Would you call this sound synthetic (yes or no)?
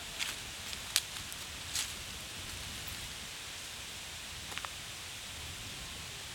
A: no